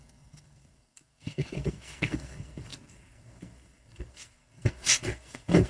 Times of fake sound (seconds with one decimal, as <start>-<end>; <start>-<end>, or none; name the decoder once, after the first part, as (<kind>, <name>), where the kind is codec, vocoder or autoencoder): 0.0-5.7 (codec, SNAC)